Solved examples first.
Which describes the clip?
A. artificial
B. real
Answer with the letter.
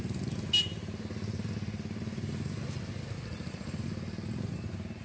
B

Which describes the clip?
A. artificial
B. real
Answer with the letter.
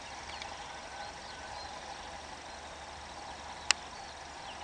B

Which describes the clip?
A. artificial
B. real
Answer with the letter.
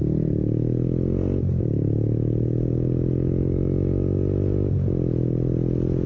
B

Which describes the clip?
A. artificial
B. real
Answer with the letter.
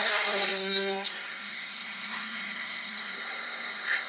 A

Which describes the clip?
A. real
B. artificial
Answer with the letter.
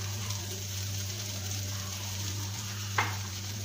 B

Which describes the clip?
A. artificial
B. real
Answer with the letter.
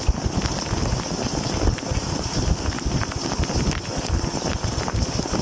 B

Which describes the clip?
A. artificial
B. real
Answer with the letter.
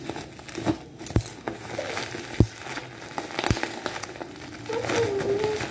B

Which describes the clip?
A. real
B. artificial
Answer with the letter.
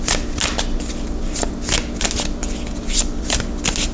A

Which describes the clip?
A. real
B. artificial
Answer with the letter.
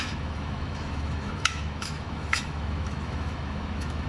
B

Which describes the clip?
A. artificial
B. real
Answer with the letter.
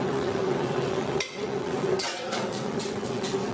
A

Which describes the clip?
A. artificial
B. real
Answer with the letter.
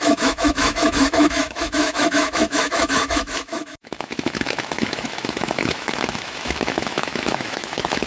A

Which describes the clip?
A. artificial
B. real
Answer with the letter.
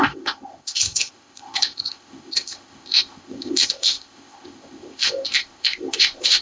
A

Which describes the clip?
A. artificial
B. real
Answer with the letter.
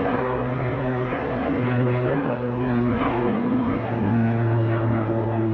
A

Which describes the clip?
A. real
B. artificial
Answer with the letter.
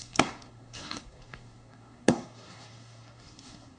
B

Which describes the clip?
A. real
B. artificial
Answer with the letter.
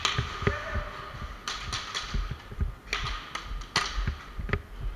A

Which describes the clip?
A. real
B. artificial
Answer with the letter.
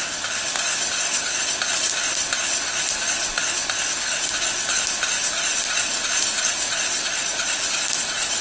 A